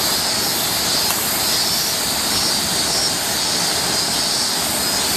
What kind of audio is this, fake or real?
real